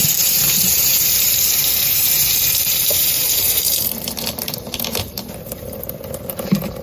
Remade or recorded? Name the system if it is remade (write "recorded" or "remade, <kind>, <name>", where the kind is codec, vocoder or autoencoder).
remade, vocoder, BigVGAN v2